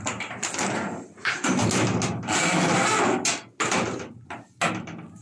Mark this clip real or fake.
real